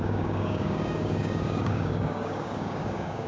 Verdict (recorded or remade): remade